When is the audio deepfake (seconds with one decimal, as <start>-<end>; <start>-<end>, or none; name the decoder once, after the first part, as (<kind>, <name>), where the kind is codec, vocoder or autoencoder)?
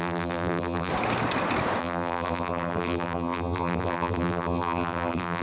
0.0-0.9 (vocoder, BigVGAN v2); 1.8-5.4